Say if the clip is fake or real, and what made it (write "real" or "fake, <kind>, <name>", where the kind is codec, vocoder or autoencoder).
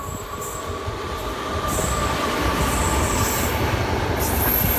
real